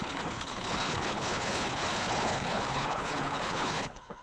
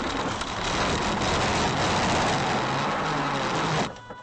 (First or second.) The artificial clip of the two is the first